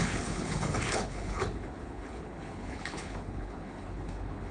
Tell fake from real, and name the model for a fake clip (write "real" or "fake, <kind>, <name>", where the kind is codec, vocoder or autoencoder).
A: fake, codec, HILCodec